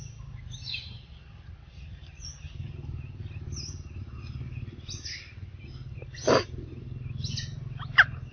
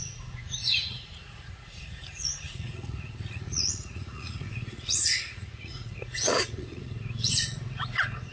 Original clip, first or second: first